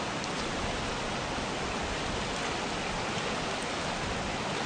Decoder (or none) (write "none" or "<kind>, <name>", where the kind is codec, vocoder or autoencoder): none